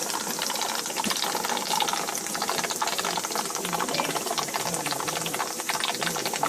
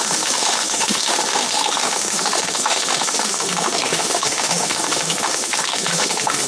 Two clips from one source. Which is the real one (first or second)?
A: first